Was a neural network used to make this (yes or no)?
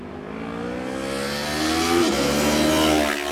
no